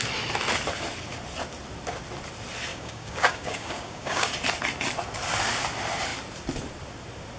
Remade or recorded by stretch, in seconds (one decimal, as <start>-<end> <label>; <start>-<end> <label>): 0.0-2.7 recorded; 2.7-4.3 remade; 4.3-7.4 recorded